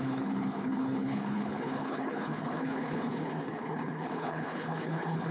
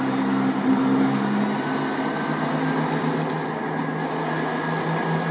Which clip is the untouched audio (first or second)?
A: second